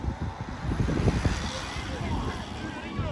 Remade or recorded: recorded